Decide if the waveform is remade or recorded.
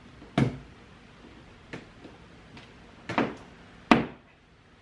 recorded